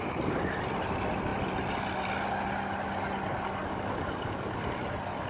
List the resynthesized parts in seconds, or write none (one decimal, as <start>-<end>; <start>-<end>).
3.6-4.5